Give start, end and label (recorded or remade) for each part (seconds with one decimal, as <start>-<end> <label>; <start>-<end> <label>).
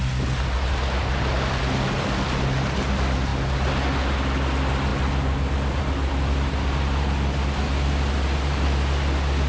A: 0.0-9.5 recorded